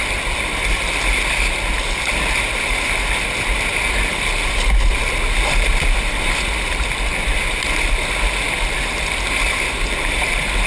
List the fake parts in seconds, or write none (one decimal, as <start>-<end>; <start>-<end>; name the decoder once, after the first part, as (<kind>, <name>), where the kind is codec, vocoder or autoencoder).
none